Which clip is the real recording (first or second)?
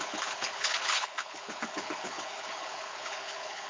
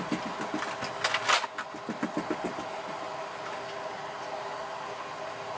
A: second